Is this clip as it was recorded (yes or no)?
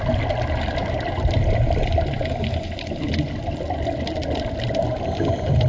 yes